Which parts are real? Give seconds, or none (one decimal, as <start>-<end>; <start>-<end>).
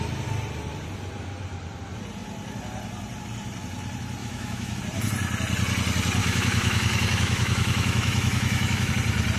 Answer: 0.0-4.2; 4.8-6.2; 8.9-9.4